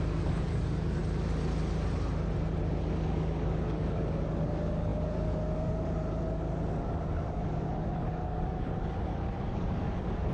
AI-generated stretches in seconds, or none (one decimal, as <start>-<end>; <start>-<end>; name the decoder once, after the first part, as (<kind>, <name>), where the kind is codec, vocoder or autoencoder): 0.0-1.0 (codec, DAC); 2.8-10.3